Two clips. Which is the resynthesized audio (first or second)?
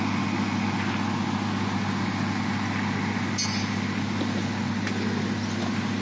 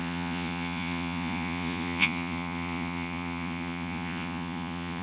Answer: second